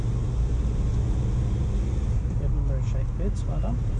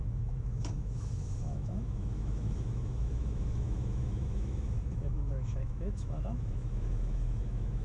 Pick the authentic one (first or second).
first